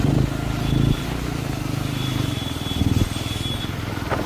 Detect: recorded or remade recorded